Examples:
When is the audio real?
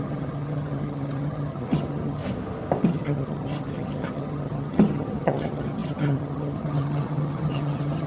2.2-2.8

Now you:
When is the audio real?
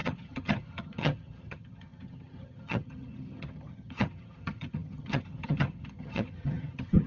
none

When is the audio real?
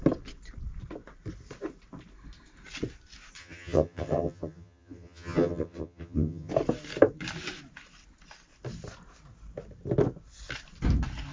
0.0-3.4; 6.5-11.3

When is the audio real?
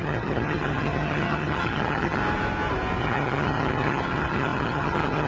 2.2-3.0